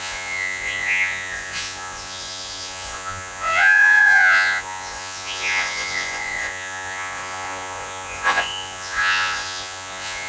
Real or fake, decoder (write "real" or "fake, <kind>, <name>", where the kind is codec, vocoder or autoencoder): fake, vocoder, Vocos